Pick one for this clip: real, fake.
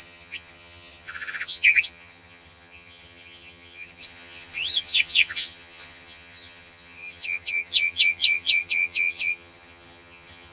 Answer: fake